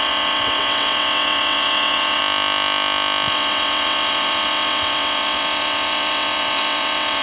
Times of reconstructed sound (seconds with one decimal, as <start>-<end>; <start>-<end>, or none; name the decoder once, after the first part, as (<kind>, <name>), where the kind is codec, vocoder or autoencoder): 0.0-2.2 (vocoder, WaveNeXt); 3.3-7.2